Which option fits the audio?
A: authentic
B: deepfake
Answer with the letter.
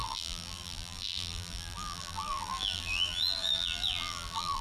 B